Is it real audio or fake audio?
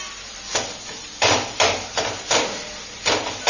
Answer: real